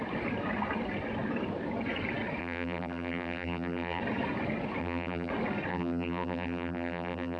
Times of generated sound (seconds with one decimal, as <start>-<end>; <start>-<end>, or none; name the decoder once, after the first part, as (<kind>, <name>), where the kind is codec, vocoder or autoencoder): 2.4-4.0 (vocoder, BigVGAN v2); 4.8-5.3; 5.7-7.4